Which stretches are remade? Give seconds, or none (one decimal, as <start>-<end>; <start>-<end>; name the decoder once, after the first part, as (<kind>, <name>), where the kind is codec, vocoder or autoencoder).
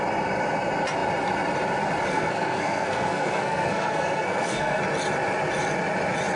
2.1-4.8 (codec, SNAC)